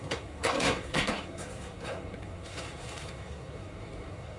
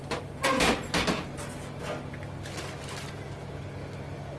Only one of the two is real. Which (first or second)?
second